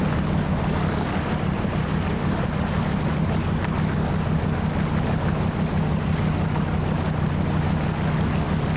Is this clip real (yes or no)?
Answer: yes